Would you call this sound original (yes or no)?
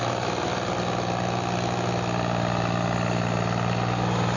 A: yes